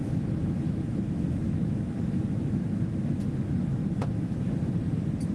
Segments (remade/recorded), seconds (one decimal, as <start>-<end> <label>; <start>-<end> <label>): 0.0-3.2 remade; 3.2-3.7 recorded; 3.7-4.7 remade; 4.7-5.3 recorded